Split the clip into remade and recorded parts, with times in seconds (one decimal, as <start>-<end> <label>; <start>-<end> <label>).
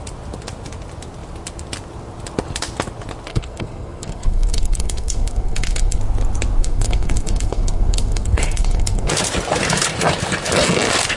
0.0-3.3 recorded; 3.3-6.0 remade; 6.0-6.6 recorded; 6.6-9.1 remade; 9.1-11.2 recorded